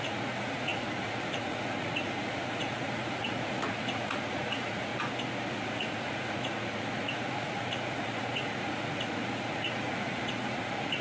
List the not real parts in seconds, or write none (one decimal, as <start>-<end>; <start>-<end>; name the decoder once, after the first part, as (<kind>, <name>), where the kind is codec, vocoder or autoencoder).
0.0-4.9 (vocoder, Vocos); 5.5-11.0

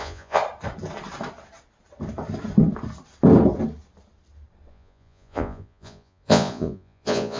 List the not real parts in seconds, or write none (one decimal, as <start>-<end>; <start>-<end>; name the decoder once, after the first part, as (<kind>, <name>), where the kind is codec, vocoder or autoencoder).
0.0-0.4 (vocoder, Vocos); 4.7-7.4

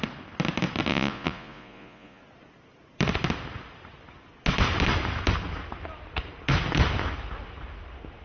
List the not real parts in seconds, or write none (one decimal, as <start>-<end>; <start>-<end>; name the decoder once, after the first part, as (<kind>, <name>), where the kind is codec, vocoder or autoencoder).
0.9-2.2 (vocoder, Vocos)